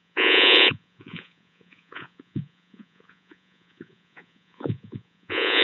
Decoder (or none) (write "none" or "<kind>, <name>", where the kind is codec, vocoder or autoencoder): vocoder, Vocos